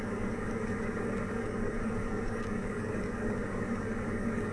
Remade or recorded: remade